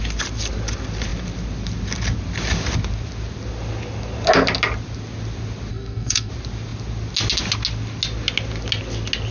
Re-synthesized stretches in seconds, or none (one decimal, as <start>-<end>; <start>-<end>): 5.7-6.3